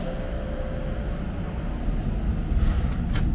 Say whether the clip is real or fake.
real